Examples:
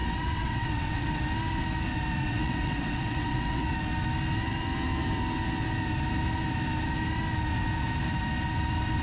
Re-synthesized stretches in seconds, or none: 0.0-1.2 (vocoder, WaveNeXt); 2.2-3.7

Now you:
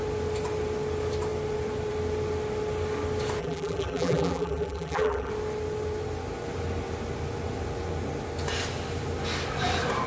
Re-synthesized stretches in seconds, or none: 3.4-5.3 (vocoder, BigVGAN v2)

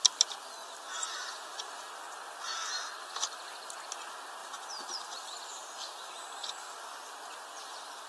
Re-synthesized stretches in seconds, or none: 0.6-1.8 (vocoder, BigVGAN v2); 4.4-5.6

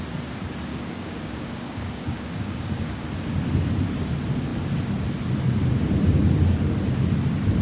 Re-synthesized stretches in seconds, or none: 0.7-3.0 (codec, DAC)

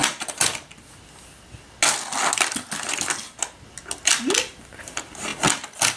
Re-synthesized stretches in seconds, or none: none